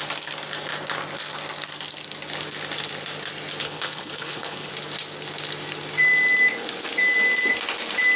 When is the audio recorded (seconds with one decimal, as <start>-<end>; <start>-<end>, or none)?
0.0-3.6; 4.7-8.2